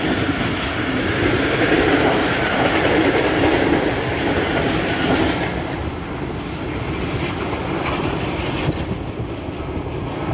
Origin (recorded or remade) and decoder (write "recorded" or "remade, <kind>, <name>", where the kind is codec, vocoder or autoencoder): recorded